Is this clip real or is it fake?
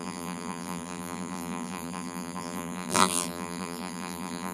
fake